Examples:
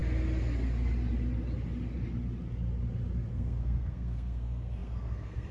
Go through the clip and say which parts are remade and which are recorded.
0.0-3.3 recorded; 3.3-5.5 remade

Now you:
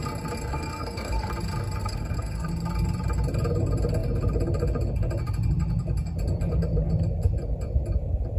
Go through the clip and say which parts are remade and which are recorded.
0.0-0.5 recorded; 0.5-1.3 remade; 1.3-1.8 recorded; 1.8-2.5 remade; 2.5-8.4 recorded

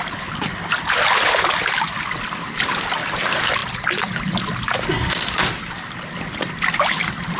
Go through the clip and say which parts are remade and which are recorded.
0.0-7.4 recorded